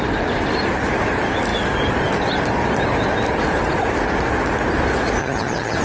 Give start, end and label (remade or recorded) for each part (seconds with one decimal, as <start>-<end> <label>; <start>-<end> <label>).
0.0-5.2 recorded; 5.2-5.8 remade